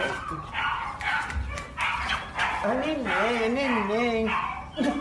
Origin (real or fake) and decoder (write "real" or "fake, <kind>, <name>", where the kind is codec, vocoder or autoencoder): real